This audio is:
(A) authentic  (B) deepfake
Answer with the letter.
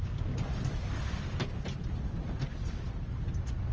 B